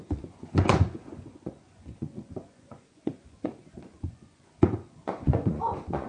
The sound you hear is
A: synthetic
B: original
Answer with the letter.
A